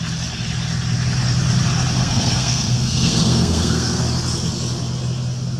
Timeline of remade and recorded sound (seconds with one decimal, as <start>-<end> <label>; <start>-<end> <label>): 0.0-2.0 recorded; 2.0-4.0 remade; 4.0-5.6 recorded